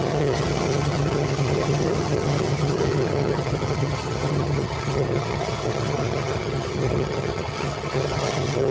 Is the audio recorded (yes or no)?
no